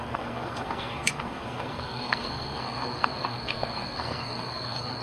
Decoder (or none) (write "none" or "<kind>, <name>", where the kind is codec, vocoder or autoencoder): codec, SNAC